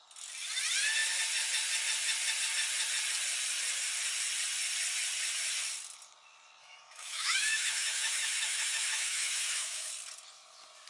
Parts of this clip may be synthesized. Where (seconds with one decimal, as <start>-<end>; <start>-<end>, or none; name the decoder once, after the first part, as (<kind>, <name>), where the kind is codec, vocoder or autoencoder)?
6.6-9.9 (autoencoder, DAC-VAE)